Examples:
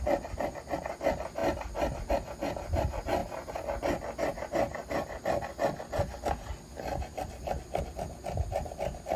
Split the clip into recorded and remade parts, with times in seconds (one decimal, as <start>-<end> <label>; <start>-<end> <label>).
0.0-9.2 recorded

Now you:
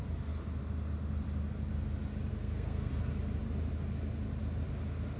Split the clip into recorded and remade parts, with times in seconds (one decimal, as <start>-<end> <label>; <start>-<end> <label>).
0.0-2.3 recorded; 2.3-2.9 remade; 2.9-5.2 recorded

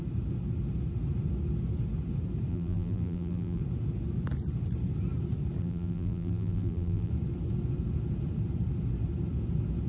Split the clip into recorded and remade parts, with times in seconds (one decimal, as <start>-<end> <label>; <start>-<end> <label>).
0.0-2.5 recorded; 2.5-3.6 remade; 3.6-5.6 recorded; 5.6-7.1 remade; 7.1-9.9 recorded

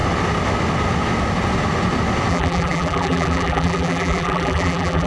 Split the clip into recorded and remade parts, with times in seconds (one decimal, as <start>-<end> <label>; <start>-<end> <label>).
0.0-2.3 recorded; 2.3-5.1 remade